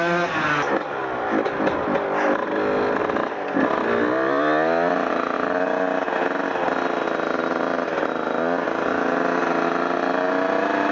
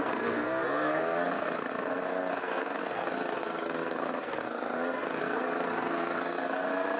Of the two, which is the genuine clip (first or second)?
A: first